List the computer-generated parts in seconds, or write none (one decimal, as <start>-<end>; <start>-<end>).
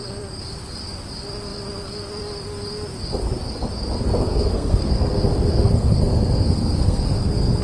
4.2-7.6